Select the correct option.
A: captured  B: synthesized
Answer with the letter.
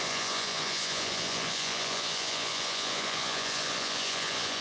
B